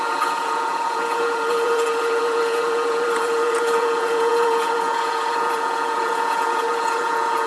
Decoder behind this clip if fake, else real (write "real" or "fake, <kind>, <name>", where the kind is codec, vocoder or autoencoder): fake, vocoder, Vocos